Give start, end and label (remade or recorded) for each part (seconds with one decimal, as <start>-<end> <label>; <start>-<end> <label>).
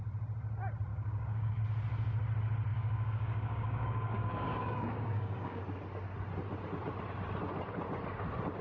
0.0-0.9 recorded; 0.9-1.6 remade; 1.6-2.7 recorded; 2.7-5.6 remade; 5.6-8.6 recorded